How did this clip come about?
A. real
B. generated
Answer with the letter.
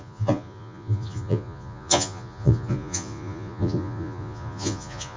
B